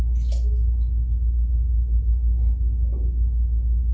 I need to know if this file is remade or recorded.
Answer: recorded